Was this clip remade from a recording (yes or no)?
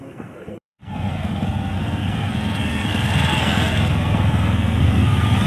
yes